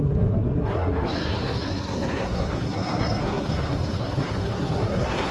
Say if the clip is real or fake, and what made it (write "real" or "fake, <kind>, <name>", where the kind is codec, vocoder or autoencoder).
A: fake, codec, SNAC